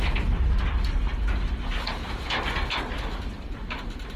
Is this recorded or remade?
recorded